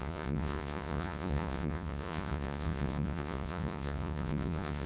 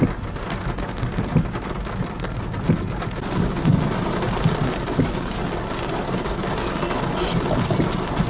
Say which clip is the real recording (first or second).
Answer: second